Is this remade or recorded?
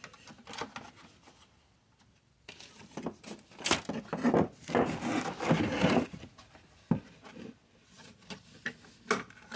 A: recorded